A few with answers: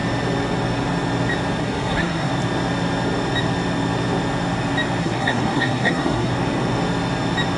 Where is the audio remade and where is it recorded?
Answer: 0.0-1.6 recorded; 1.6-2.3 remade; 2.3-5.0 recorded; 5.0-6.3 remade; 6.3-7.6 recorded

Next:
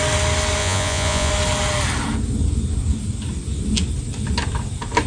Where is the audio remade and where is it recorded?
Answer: 0.0-0.6 recorded; 0.6-1.3 remade; 1.3-5.1 recorded

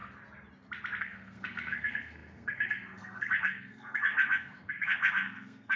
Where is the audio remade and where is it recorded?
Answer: 0.0-1.0 recorded; 1.0-5.8 remade

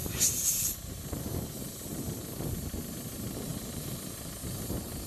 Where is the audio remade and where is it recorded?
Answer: 0.0-5.1 recorded

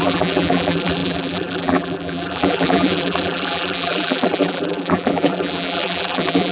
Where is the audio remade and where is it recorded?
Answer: 0.0-6.5 remade

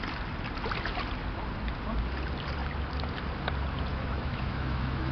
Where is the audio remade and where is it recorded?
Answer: 0.0-3.9 recorded; 3.9-5.1 remade